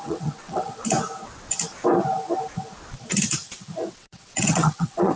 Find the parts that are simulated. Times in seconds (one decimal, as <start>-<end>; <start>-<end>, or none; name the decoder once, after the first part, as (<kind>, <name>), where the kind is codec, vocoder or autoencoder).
0.0-0.8 (vocoder, WaveNeXt); 3.9-5.2